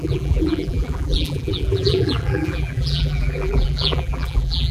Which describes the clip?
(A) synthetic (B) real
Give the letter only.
A